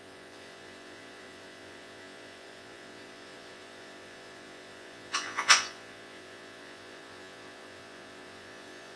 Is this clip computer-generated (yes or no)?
yes